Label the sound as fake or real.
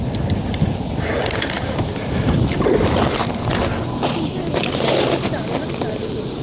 real